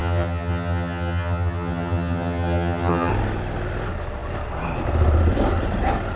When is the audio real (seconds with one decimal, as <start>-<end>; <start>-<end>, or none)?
3.1-6.2